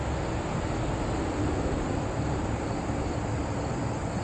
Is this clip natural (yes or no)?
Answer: yes